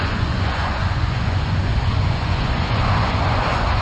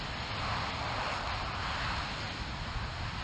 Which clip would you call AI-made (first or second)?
first